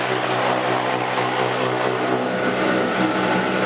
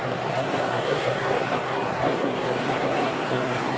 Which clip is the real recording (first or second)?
first